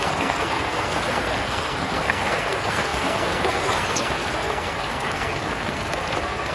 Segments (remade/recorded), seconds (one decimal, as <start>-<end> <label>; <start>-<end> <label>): 0.0-6.5 remade